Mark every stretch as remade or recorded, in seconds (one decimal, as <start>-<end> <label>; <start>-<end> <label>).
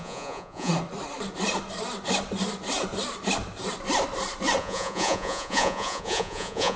0.0-0.7 remade; 0.7-4.6 recorded; 4.6-6.8 remade